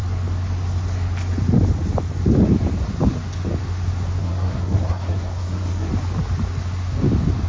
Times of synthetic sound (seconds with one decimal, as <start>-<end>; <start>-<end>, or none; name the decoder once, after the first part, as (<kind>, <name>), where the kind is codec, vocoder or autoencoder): 4.2-5.9 (codec, SNAC)

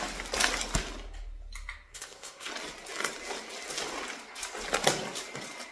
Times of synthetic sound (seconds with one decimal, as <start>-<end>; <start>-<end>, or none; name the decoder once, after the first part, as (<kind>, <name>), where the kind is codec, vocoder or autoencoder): 1.9-2.5 (codec, SNAC)

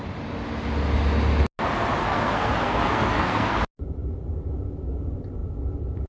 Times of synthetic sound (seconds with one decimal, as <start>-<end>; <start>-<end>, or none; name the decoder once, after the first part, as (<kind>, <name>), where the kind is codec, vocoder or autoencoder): 2.0-3.6 (codec, SNAC)